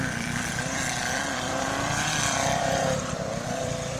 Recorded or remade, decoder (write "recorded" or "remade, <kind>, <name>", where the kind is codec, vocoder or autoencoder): remade, vocoder, BigVGAN v2